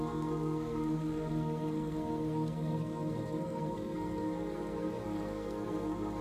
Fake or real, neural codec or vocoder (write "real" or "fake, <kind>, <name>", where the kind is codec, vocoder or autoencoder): fake, codec, SNAC